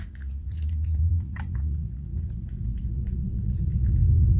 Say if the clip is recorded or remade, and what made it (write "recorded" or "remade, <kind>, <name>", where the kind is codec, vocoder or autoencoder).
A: remade, vocoder, Vocos